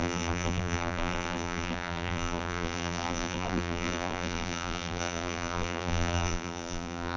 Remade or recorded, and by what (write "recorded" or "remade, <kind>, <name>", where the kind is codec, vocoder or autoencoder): remade, vocoder, BigVGAN v2